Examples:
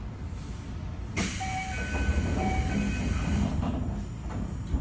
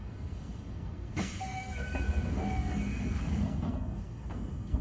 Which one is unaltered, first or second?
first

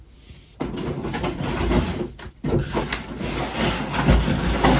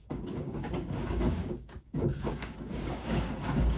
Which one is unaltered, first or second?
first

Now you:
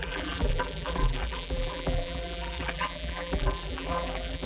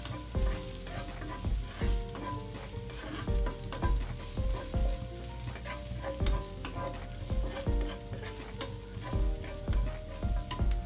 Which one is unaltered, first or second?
second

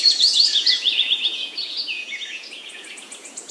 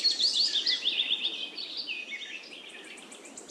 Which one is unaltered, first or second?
second